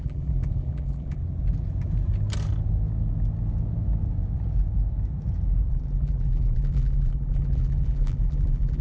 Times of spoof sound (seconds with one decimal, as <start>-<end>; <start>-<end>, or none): 0.0-1.2; 5.7-8.8